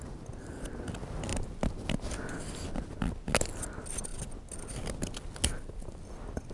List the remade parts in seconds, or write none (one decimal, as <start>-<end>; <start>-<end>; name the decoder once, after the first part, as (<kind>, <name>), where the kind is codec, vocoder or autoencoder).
none